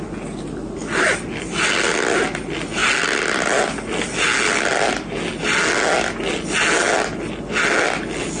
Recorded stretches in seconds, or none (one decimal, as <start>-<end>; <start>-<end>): 0.0-8.4